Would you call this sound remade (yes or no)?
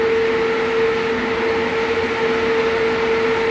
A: no